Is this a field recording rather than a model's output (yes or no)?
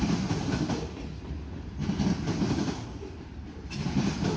yes